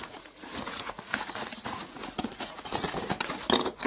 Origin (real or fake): fake